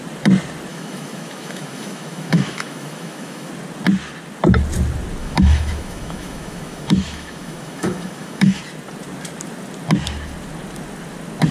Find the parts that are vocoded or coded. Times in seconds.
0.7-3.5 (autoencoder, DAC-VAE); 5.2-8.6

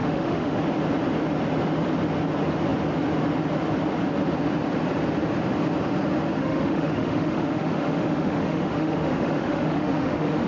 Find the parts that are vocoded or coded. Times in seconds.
0.0-0.6 (autoencoder, DAC-VAE); 6.4-10.5